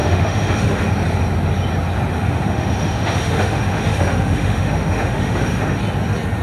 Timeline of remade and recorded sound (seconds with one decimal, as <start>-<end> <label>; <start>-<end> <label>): 0.0-0.9 remade; 0.9-2.1 recorded; 2.1-5.8 remade; 5.8-6.4 recorded